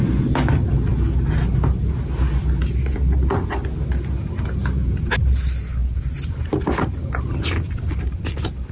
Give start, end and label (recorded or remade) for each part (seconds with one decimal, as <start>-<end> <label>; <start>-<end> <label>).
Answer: 0.0-8.7 recorded